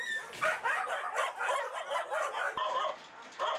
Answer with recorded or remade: recorded